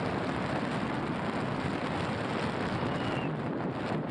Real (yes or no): yes